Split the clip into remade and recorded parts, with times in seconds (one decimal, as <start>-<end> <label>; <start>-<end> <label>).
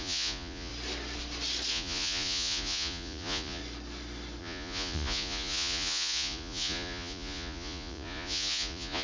0.0-0.7 remade; 0.7-1.7 recorded; 1.7-3.6 remade; 3.6-4.4 recorded; 4.4-9.0 remade